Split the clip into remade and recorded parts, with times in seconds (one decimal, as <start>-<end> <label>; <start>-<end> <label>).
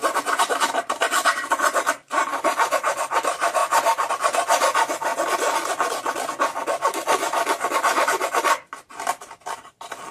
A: 0.0-5.1 remade; 5.1-8.9 recorded; 8.9-10.1 remade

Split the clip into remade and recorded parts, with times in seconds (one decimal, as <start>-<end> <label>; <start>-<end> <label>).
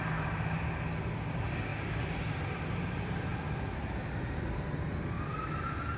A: 0.0-1.7 recorded; 1.7-2.4 remade; 2.4-6.0 recorded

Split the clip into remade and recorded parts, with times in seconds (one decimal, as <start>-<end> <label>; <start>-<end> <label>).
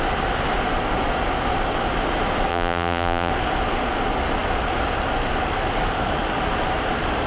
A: 0.0-2.5 recorded; 2.5-3.3 remade; 3.3-7.3 recorded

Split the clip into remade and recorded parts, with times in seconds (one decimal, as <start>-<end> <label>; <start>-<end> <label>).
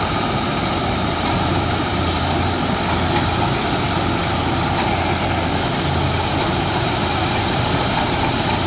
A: 0.0-1.9 remade; 1.9-6.3 recorded; 6.3-8.7 remade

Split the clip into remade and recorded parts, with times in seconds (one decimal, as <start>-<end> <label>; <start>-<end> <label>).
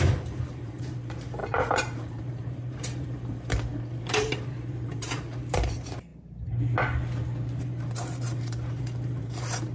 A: 0.0-6.1 remade; 6.1-7.6 recorded; 7.6-9.7 remade